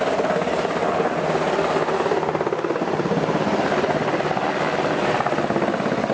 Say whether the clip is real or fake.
real